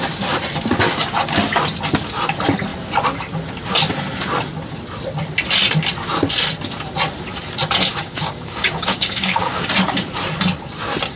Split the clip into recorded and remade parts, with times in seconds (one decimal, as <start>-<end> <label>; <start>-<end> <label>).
0.0-7.9 recorded; 7.9-9.7 remade; 9.7-11.2 recorded